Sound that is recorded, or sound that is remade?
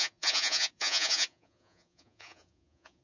remade